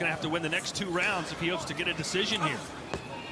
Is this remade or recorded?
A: recorded